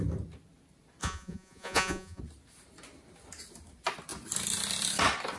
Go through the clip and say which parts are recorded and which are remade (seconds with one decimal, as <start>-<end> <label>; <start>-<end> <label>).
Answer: 0.0-1.0 recorded; 1.0-2.2 remade; 2.2-5.4 recorded